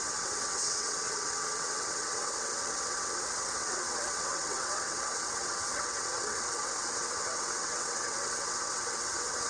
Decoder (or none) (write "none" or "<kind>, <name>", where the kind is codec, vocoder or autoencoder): vocoder, WaveNeXt